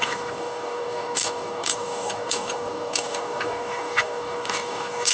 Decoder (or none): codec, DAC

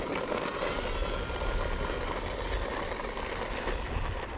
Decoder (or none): none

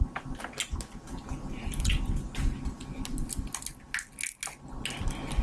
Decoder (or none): none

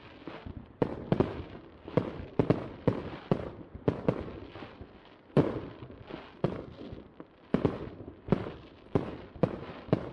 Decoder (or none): vocoder, BigVGAN v2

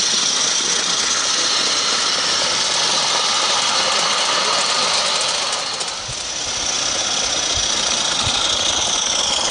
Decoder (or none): none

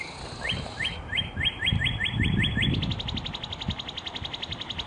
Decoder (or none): none